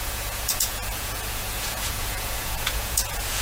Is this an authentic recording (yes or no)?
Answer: no